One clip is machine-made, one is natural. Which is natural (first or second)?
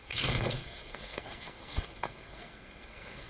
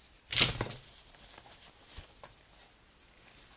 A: second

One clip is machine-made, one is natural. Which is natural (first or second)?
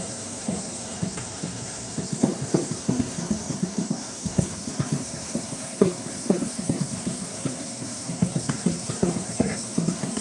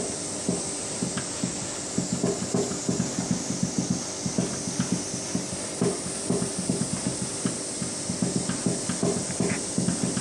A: second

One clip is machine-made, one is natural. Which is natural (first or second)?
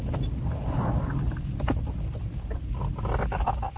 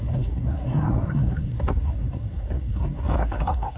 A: first